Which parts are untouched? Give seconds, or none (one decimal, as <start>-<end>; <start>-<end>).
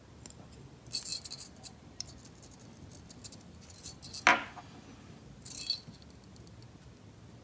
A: 0.0-1.1; 2.2-7.4